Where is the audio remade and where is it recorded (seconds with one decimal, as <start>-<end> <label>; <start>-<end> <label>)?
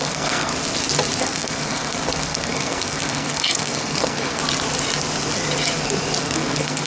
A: 0.0-0.5 remade; 0.5-1.2 recorded; 1.2-4.4 remade; 4.4-6.2 recorded; 6.2-6.9 remade